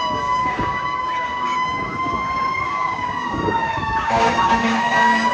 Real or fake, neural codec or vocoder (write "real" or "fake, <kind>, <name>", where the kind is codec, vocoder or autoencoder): fake, codec, DAC